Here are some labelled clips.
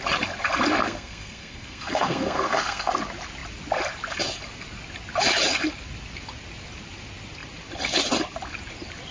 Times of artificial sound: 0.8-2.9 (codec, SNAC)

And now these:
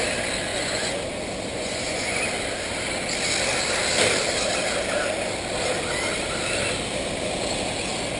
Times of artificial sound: 0.5-1.0 (vocoder, Vocos); 1.5-2.2

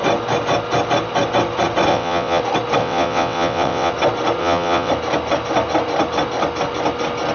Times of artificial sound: 1.9-2.4 (vocoder, WaveNeXt); 2.8-3.9; 4.4-4.9

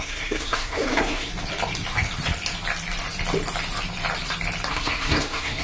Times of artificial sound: 0.0-1.3 (codec, SNAC); 4.7-5.6